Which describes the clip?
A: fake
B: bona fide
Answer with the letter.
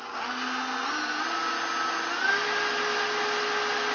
B